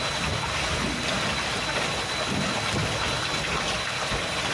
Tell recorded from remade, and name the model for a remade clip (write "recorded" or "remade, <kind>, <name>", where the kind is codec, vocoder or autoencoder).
recorded